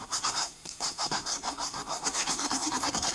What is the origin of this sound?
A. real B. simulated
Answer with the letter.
B